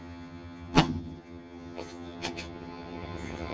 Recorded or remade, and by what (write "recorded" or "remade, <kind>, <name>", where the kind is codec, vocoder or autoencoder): remade, vocoder, HiFi-GAN